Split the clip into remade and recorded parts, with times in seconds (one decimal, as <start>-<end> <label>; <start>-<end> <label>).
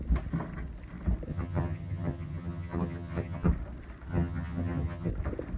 0.0-1.3 recorded; 1.3-3.5 remade; 3.5-4.1 recorded; 4.1-5.1 remade; 5.1-5.6 recorded